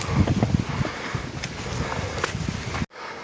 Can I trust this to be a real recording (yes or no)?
yes